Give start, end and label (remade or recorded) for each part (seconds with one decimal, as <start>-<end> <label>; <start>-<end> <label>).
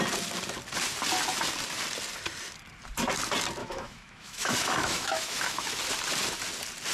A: 0.0-3.6 recorded; 3.6-5.7 remade; 5.7-6.9 recorded